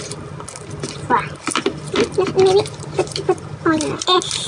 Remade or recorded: recorded